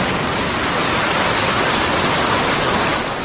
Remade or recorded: remade